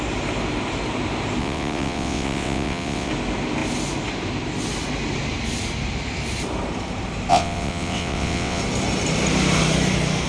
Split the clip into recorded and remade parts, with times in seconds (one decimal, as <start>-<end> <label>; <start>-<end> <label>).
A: 0.0-1.4 recorded; 1.4-3.1 remade; 3.1-7.3 recorded; 7.3-8.6 remade; 8.6-10.3 recorded